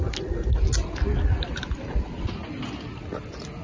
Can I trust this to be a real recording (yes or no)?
yes